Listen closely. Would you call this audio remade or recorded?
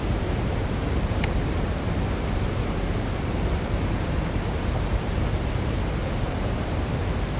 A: remade